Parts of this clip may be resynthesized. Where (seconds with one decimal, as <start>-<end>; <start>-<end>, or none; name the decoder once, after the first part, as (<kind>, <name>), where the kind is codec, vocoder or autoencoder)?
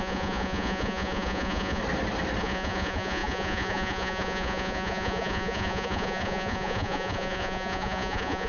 0.0-1.8 (vocoder, Vocos); 2.4-8.5